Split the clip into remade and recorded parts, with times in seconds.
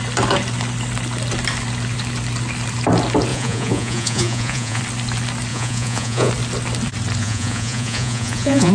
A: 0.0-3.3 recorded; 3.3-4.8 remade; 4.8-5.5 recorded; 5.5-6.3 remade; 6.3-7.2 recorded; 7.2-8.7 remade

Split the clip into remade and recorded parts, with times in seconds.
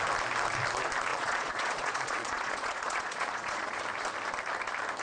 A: 0.0-1.1 recorded; 1.1-3.8 remade; 3.8-5.0 recorded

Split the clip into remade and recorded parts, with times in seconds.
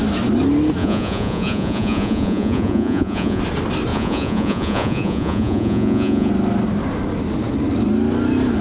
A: 0.0-0.8 recorded; 0.8-3.4 remade; 3.4-3.9 recorded; 3.9-6.3 remade; 6.3-8.6 recorded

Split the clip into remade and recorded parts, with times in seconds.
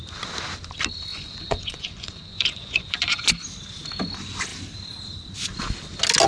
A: 0.0-1.1 recorded; 1.1-3.3 remade; 3.3-6.3 recorded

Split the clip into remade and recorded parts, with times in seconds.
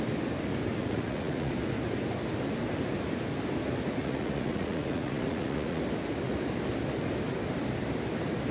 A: 0.0-0.8 recorded; 0.8-1.5 remade; 1.5-4.0 recorded; 4.0-5.8 remade; 5.8-8.5 recorded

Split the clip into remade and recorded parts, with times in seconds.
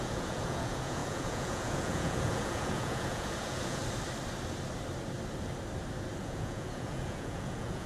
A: 0.0-3.8 remade; 3.8-6.2 recorded; 6.2-7.9 remade